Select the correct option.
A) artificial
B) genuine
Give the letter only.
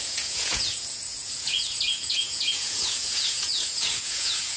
A